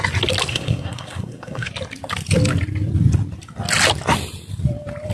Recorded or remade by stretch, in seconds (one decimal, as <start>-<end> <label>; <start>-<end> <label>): 0.0-0.5 recorded; 0.5-1.7 remade; 1.7-5.1 recorded